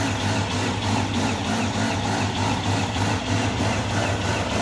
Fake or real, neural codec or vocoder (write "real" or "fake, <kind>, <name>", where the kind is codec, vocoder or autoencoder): real